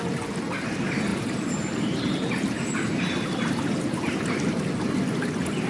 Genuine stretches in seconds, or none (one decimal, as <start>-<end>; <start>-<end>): 0.0-5.7